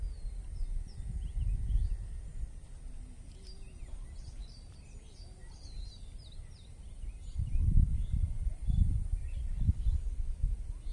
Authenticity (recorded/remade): recorded